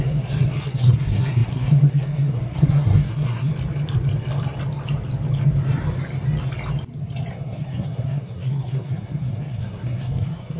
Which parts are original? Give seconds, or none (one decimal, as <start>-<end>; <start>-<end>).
3.5-7.3